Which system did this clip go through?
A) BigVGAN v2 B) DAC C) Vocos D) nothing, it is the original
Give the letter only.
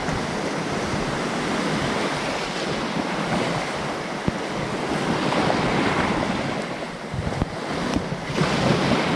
D